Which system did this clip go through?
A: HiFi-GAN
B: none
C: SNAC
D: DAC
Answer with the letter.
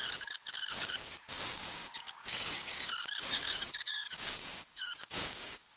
D